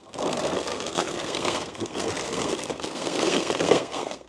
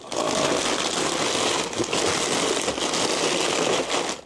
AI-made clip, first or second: first